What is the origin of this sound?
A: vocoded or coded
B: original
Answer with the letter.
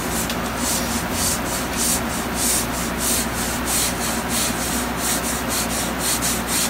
B